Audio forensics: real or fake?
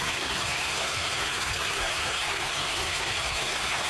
fake